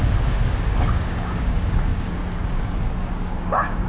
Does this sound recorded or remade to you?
remade